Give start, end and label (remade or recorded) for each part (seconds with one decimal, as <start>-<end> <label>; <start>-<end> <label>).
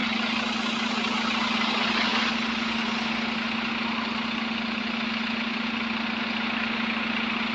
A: 0.0-7.5 recorded